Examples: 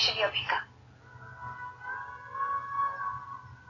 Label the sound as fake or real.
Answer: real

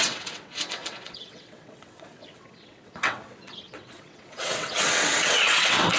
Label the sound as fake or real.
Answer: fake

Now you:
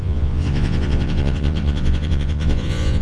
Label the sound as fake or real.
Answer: fake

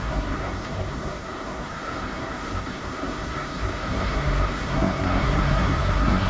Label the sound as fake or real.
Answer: fake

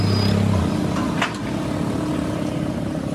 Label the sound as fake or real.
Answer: real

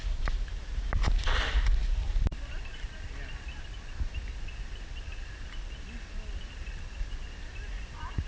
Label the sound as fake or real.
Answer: real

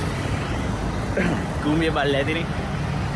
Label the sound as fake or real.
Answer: real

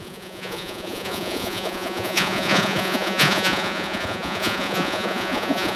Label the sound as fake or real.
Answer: fake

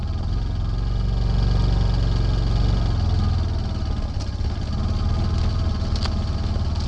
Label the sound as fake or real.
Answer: real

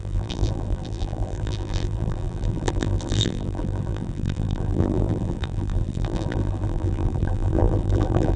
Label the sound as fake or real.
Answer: fake